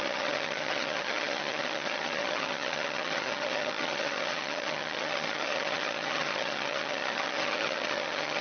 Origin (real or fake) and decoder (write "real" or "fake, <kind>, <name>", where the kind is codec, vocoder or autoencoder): fake, vocoder, HiFi-GAN